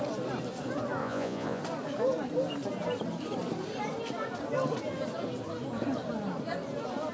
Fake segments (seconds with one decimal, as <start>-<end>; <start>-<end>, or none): 1.0-1.6